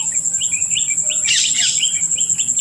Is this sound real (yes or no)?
yes